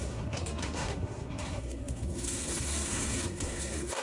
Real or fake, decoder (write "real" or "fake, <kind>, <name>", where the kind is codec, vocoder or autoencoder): fake, codec, SNAC